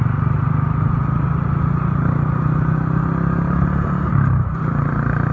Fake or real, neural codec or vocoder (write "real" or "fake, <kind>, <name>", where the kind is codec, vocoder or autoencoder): real